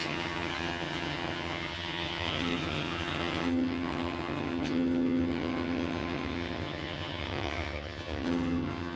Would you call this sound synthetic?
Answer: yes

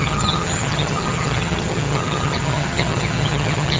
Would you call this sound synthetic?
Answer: yes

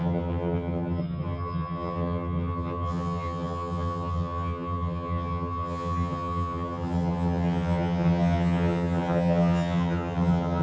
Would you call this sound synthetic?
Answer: yes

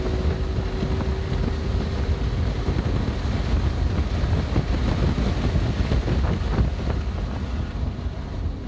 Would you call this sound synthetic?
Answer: no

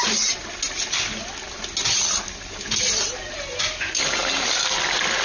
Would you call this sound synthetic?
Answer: no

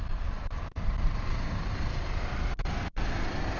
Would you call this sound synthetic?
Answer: no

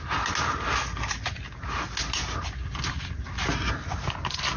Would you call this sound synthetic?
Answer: no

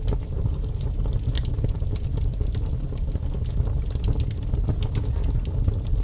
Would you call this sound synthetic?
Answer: no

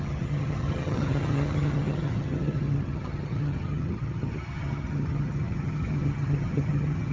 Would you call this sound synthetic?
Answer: yes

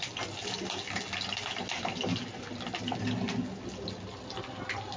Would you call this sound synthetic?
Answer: no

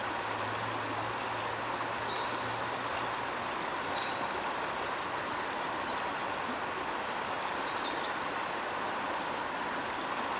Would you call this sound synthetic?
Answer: no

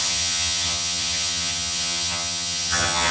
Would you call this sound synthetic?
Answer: yes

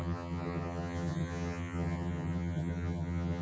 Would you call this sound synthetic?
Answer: yes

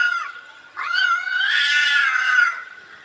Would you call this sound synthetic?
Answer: yes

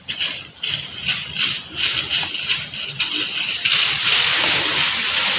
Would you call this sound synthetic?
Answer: no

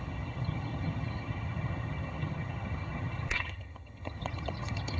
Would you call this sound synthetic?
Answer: yes